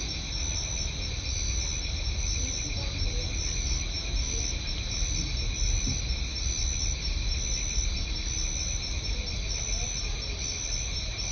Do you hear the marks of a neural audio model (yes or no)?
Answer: no